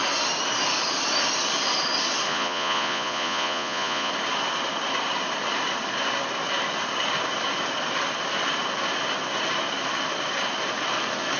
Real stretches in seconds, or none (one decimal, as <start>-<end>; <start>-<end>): 0.0-2.3; 4.1-11.4